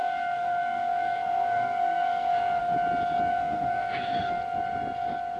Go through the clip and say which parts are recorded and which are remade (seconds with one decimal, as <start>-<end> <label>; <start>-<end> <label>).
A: 0.0-2.6 remade; 2.6-3.3 recorded; 3.3-4.4 remade; 4.4-5.4 recorded